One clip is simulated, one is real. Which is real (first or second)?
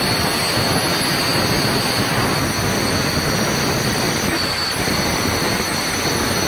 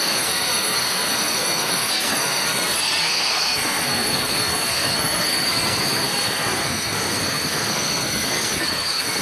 first